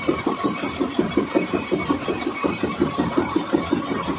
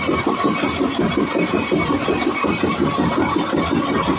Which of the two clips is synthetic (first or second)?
first